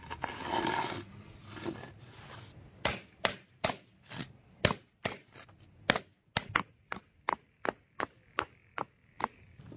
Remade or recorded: recorded